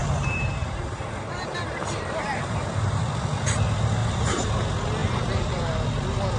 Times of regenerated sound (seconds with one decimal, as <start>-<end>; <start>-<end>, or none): 0.0-3.0; 4.0-4.5; 5.0-5.6

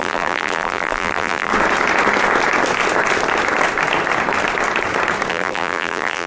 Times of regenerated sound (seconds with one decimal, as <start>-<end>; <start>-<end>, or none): 0.0-1.5; 5.3-6.3

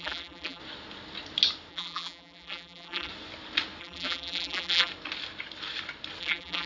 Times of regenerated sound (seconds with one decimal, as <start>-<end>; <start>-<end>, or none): 0.0-0.6; 1.7-3.1; 3.8-4.9; 6.2-6.7

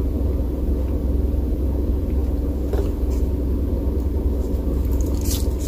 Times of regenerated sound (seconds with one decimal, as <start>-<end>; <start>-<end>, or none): none

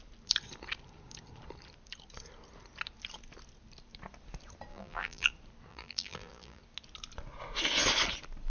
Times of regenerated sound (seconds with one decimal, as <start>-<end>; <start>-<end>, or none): 4.7-5.3; 5.7-6.6